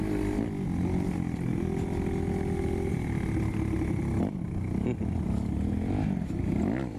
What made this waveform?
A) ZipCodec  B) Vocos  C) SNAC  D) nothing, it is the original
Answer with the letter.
D